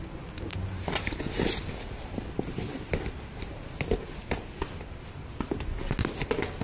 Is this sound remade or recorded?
recorded